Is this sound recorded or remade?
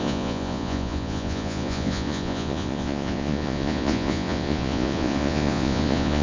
remade